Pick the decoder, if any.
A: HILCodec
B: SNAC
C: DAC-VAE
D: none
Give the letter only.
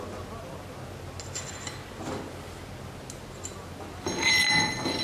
D